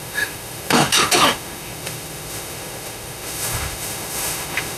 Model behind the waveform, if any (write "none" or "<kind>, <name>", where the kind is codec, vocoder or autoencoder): autoencoder, DAC-VAE